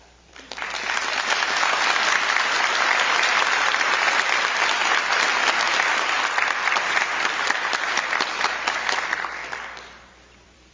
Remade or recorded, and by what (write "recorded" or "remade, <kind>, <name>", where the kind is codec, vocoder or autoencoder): remade, vocoder, BigVGAN v2